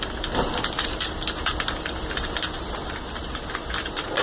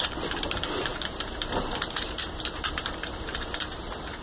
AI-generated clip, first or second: second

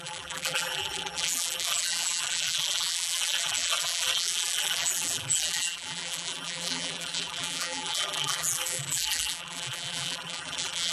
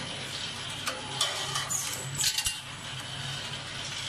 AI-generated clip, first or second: first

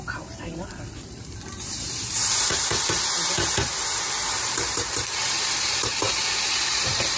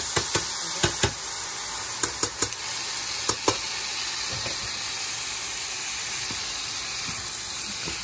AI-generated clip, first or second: first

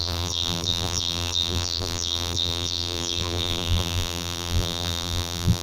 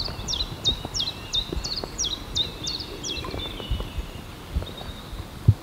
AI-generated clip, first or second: first